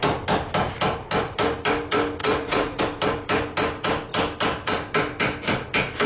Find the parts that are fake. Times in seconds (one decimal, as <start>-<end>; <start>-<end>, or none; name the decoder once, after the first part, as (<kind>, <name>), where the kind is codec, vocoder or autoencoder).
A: 2.2-2.8 (vocoder, Vocos)